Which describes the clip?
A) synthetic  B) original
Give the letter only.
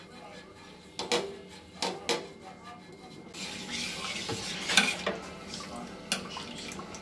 B